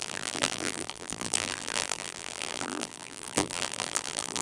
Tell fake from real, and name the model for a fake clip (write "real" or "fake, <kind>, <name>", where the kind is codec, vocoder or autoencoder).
fake, vocoder, BigVGAN v2